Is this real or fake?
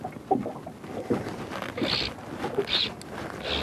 real